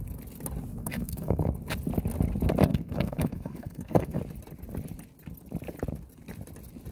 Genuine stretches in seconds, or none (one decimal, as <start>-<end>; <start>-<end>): 0.0-0.8; 1.5-2.7; 4.2-6.9